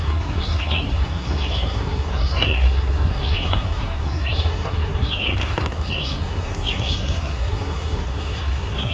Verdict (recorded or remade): remade